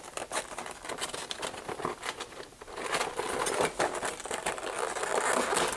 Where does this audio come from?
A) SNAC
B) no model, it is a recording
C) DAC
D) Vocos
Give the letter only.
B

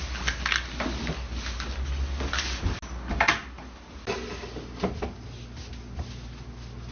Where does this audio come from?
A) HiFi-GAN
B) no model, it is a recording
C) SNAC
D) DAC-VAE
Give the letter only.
B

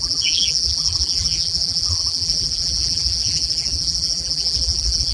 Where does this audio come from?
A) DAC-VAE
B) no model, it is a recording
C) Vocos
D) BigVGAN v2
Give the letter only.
D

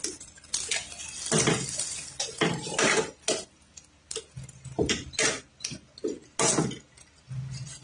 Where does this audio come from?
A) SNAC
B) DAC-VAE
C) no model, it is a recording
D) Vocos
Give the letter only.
C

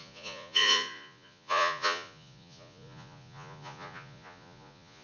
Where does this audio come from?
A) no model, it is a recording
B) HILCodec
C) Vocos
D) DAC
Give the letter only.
C